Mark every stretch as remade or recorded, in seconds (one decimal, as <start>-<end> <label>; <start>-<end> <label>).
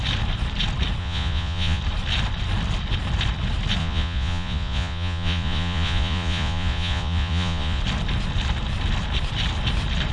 0.0-1.0 recorded; 1.0-1.8 remade; 1.8-3.8 recorded; 3.8-7.8 remade; 7.8-10.1 recorded